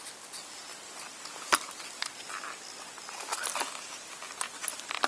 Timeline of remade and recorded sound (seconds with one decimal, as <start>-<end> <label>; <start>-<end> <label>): 0.0-5.1 recorded